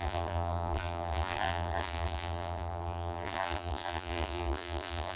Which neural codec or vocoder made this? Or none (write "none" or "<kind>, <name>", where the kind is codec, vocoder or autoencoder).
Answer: vocoder, BigVGAN v2